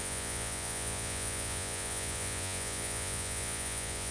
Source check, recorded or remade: remade